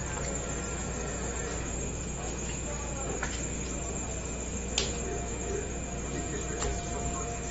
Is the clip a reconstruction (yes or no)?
no